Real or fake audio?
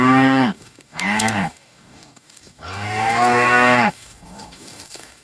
fake